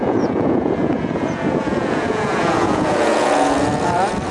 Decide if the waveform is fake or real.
fake